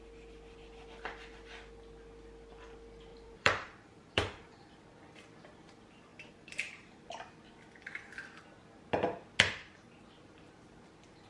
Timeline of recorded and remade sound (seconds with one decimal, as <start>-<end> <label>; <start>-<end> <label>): 0.0-3.1 recorded; 3.1-4.8 remade; 4.8-6.1 recorded; 6.1-7.0 remade; 7.0-11.3 recorded